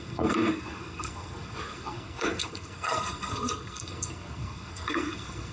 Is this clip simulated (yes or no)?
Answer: yes